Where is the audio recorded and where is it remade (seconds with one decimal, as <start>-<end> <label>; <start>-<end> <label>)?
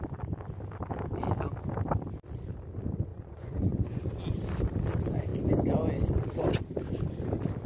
0.0-3.1 recorded; 3.1-4.1 remade; 4.1-7.7 recorded